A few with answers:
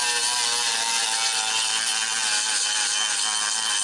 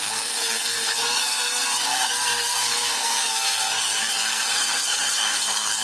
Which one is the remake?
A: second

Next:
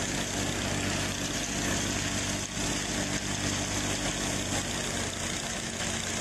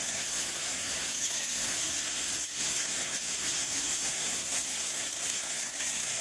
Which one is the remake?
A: second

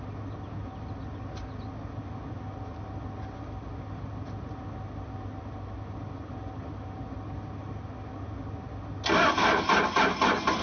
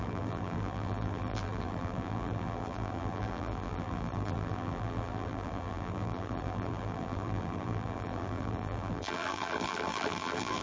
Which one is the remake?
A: second